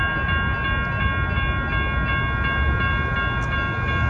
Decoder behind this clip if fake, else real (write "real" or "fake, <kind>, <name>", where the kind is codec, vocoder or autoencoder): real